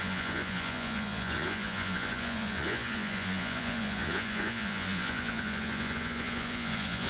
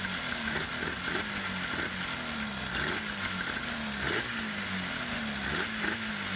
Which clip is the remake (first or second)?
first